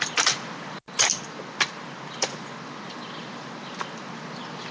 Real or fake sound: real